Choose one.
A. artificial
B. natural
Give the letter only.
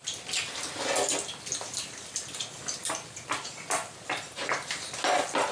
B